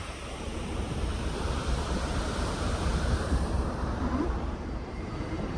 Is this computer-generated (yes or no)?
yes